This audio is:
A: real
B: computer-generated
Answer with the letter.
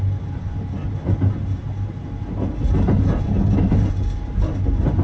A